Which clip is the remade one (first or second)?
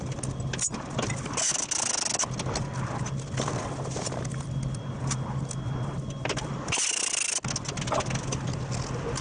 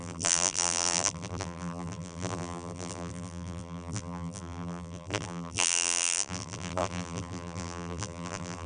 second